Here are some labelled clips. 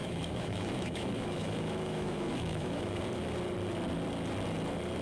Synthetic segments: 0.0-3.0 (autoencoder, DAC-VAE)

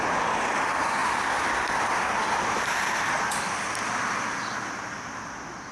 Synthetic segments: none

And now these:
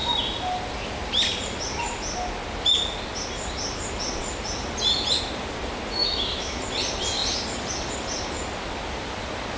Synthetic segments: 6.0-6.6 (autoencoder, DAC-VAE)

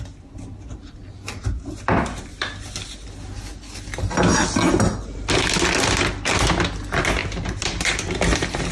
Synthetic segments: 7.2-8.7 (vocoder, BigVGAN v2)